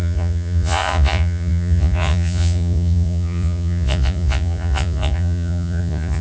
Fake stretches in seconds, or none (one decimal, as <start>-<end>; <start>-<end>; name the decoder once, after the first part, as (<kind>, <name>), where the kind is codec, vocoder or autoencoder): 0.0-6.2 (vocoder, Vocos)